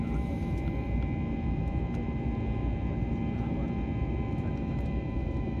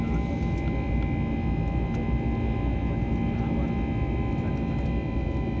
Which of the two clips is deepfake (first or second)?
first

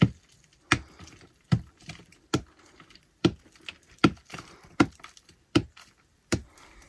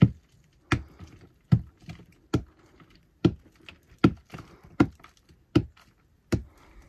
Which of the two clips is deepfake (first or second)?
first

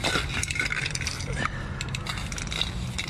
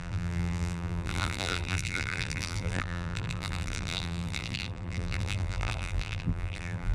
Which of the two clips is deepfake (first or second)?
second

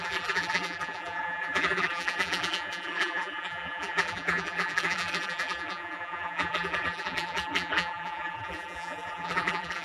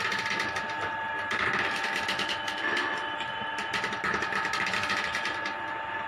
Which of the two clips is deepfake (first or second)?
first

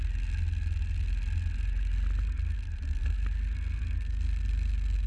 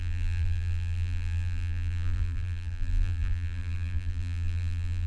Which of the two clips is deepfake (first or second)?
second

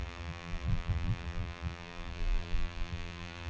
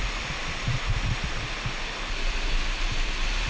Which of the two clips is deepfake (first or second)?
first